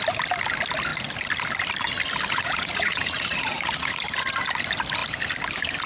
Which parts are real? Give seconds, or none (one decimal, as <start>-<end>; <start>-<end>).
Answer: 0.0-2.3; 4.0-5.9